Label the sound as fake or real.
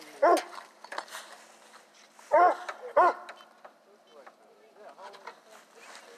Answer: real